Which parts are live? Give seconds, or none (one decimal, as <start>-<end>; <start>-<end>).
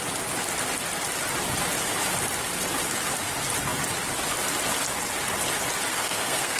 0.0-5.9